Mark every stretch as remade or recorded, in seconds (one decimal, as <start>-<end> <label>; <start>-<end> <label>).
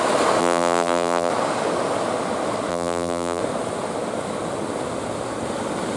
0.0-0.4 recorded; 0.4-1.3 remade; 1.3-2.7 recorded; 2.7-3.4 remade; 3.4-6.0 recorded